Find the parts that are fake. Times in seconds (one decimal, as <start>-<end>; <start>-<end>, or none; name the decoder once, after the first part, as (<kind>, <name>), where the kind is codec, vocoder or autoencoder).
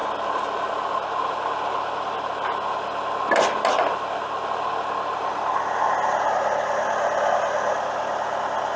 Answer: none